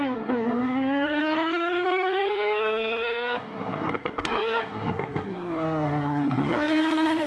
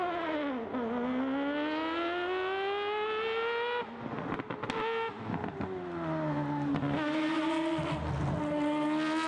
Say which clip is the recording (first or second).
second